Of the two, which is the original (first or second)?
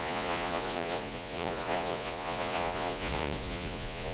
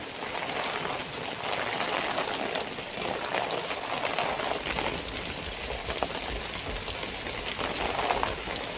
second